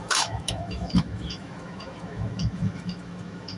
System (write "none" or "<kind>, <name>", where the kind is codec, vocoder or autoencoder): autoencoder, DAC-VAE